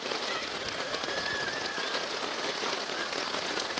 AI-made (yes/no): yes